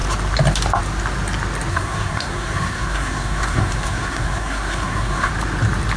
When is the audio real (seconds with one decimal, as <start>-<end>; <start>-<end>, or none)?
0.0-1.7; 5.3-6.0